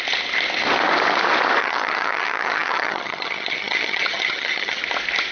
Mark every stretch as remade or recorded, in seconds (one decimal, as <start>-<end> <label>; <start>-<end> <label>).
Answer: 0.0-1.6 recorded; 1.6-4.8 remade; 4.8-5.3 recorded